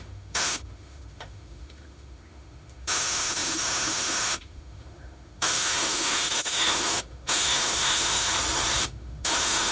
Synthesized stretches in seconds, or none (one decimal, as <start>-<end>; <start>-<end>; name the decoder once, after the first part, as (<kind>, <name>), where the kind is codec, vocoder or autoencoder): 0.0-8.3 (autoencoder, DAC-VAE); 8.8-9.7